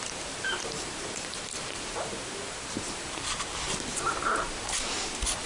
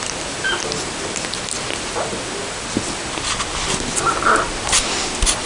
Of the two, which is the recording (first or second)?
second